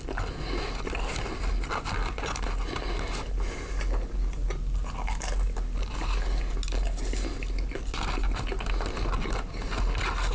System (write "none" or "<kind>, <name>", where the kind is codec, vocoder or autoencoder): none